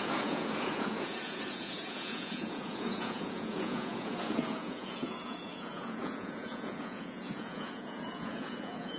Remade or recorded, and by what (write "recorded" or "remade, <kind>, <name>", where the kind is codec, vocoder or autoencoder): remade, vocoder, Vocos